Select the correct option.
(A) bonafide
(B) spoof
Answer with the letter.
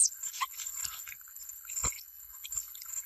B